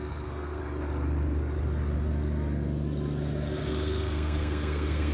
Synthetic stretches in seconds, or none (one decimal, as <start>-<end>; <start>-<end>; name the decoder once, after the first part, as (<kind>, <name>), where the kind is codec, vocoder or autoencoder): 0.0-0.6 (codec, SNAC); 3.7-5.1